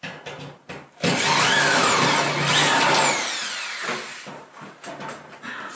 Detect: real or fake real